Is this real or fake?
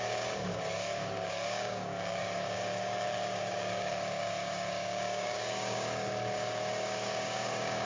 fake